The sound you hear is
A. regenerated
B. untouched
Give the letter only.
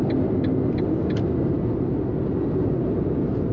B